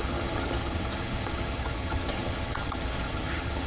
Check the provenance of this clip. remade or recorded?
remade